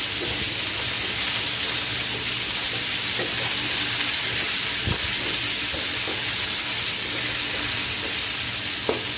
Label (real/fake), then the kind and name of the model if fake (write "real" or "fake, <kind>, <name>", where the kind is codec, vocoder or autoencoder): real